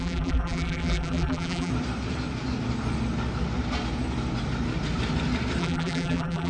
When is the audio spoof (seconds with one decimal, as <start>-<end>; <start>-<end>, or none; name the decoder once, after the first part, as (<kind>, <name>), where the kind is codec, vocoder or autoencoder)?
0.0-1.7 (vocoder, BigVGAN v2); 5.6-6.5